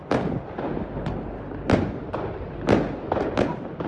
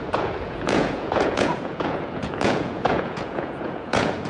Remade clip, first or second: second